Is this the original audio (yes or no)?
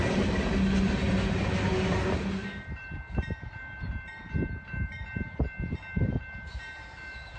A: yes